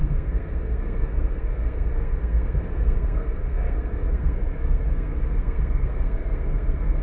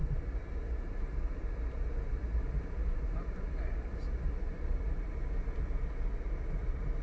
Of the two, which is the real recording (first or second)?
second